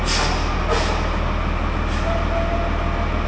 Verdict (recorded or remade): recorded